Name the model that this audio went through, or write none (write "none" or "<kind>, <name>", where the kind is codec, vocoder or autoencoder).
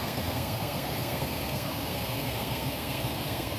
codec, SNAC